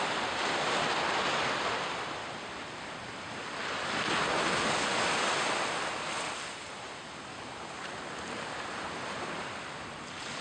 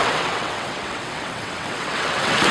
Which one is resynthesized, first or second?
second